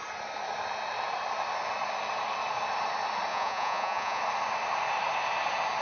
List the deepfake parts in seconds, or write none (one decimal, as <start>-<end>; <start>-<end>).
3.3-4.2